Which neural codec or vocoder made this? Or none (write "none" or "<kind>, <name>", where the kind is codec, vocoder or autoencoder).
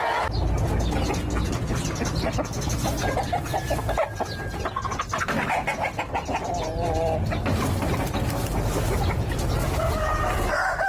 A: none